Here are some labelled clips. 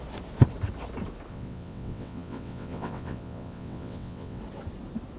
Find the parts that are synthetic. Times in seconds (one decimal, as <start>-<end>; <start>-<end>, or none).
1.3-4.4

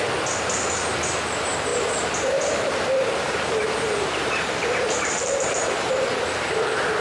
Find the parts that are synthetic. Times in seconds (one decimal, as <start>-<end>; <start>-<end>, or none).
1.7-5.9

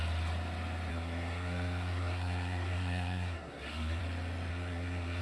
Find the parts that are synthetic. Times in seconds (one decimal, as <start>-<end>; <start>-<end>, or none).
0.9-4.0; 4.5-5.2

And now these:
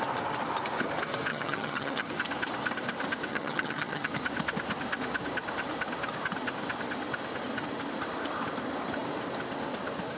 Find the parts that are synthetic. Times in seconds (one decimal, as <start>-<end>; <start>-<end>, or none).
1.3-2.1; 3.3-4.1

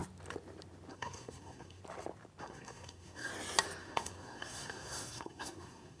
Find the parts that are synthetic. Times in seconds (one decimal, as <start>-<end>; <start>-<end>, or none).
0.9-1.8; 2.4-3.3; 3.8-6.0

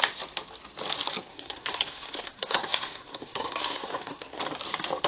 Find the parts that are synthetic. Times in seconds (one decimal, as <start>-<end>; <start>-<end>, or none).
1.3-4.4